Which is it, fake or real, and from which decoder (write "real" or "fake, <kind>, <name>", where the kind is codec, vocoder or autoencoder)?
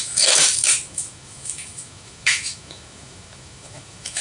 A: fake, autoencoder, DAC-VAE